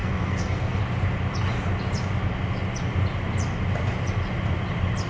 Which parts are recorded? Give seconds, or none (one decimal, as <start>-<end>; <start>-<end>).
0.8-5.1